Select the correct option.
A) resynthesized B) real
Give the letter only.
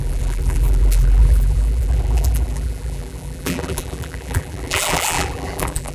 A